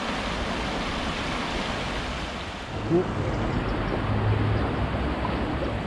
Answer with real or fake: real